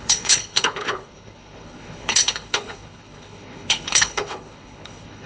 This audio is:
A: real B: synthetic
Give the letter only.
B